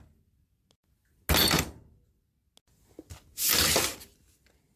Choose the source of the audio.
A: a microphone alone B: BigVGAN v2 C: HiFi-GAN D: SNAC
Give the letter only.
A